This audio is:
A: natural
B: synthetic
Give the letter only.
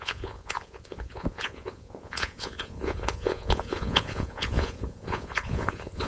B